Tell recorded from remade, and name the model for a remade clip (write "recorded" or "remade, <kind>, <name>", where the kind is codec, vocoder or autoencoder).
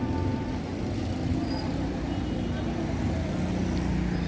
recorded